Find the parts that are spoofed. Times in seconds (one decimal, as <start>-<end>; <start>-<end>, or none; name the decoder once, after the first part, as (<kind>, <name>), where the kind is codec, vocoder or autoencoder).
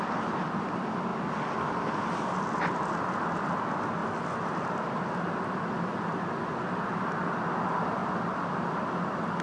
none